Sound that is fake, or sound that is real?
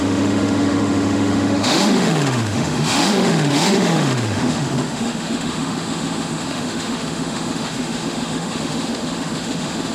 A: fake